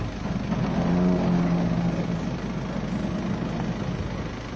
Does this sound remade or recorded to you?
recorded